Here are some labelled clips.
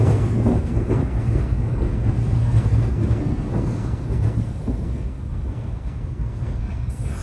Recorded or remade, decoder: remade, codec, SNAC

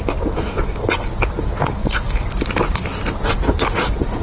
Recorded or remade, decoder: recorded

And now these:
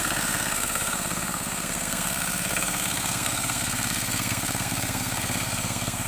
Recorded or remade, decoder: remade, codec, SNAC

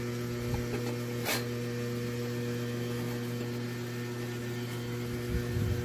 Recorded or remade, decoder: recorded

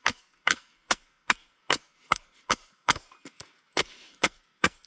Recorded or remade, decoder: remade, codec, SNAC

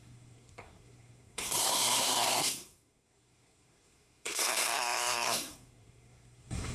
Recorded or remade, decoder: remade, codec, SNAC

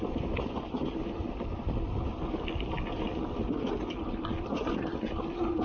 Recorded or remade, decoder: recorded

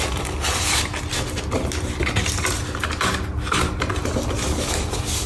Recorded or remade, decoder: recorded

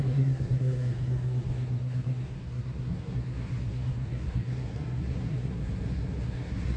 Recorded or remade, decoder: remade, codec, SNAC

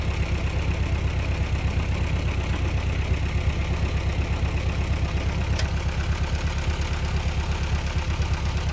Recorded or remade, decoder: recorded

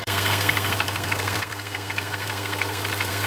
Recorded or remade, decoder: remade, codec, SNAC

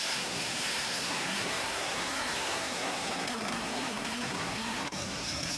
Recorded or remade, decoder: remade, codec, SNAC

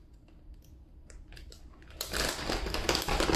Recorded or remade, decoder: recorded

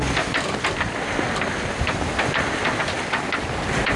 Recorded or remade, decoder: recorded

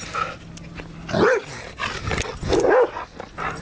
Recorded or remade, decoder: recorded